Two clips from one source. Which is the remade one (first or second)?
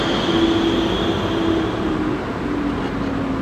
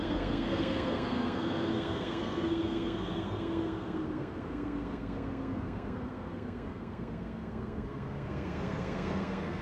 second